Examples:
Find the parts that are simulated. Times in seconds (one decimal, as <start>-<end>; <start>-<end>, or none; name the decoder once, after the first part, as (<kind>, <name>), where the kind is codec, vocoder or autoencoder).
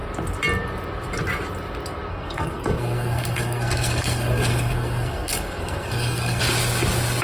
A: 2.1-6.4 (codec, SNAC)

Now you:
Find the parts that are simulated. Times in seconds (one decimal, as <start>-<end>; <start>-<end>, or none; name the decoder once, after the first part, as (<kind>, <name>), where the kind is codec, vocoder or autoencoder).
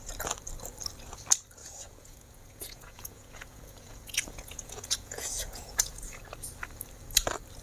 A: 1.6-6.2 (vocoder, Vocos)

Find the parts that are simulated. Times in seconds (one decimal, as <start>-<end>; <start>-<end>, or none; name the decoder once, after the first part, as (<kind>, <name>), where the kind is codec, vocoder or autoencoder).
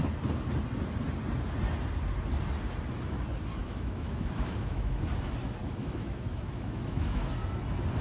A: 3.6-5.1 (autoencoder, DAC-VAE); 5.6-7.3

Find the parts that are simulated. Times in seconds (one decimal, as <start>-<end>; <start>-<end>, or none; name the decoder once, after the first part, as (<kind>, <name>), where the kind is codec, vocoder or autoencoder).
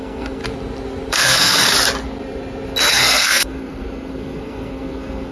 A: 0.0-0.4 (codec, SNAC); 1.1-1.6; 2.9-5.3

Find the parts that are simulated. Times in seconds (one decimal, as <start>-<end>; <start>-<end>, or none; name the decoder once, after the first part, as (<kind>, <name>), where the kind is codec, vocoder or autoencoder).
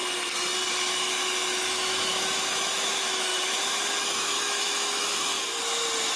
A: 0.7-5.3 (autoencoder, DAC-VAE)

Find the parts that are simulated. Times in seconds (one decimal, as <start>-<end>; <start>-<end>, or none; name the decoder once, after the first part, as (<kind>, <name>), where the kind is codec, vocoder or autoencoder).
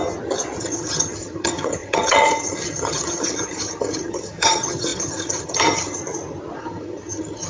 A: 0.6-6.0 (vocoder, HiFi-GAN); 6.6-7.5